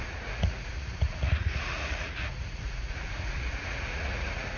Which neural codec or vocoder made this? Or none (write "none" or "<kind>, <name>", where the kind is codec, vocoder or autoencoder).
vocoder, Vocos